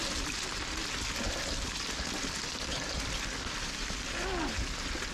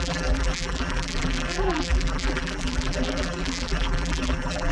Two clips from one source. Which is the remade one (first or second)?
second